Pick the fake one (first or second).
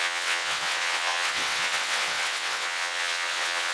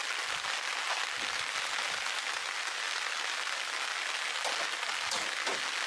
first